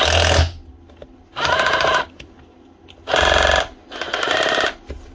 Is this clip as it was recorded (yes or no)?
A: yes